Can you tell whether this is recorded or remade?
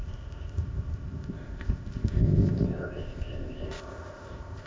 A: remade